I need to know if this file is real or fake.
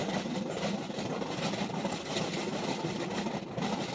real